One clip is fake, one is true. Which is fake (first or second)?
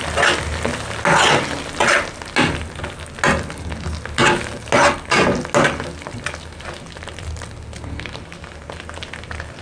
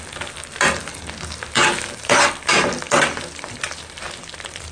second